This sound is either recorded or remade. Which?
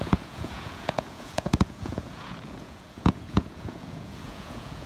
remade